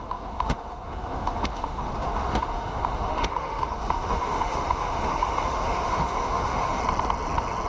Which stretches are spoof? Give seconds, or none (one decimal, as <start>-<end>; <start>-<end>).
0.0-6.8